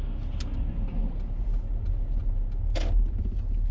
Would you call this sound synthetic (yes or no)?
no